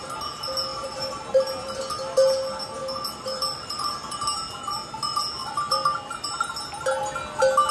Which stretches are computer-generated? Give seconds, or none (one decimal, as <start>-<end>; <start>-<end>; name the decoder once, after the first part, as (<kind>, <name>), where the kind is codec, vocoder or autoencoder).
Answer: 0.7-1.8 (vocoder, BigVGAN v2); 2.8-4.2; 5.4-6.5